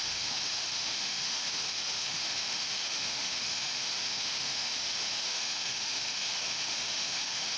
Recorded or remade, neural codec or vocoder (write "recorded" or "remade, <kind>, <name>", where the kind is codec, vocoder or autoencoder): remade, autoencoder, DAC-VAE